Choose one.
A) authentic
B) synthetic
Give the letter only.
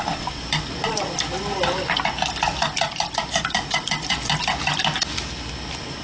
A